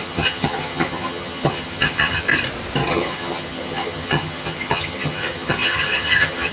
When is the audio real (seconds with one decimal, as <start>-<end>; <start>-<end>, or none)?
2.3-2.9